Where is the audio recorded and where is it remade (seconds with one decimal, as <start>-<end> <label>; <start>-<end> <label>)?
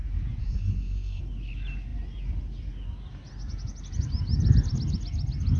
0.0-0.4 recorded; 0.4-1.2 remade; 1.2-5.6 recorded